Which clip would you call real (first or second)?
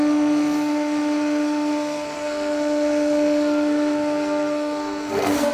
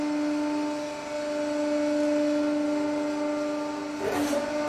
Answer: second